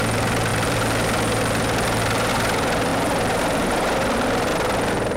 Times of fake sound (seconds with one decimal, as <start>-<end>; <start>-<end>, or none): 0.0-2.9; 3.4-4.5